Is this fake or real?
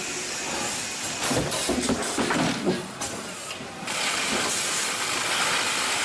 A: real